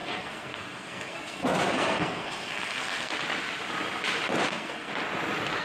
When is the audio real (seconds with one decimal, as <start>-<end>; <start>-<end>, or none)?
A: 3.1-4.5; 4.9-5.6